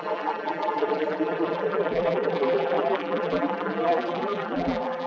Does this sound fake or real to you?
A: fake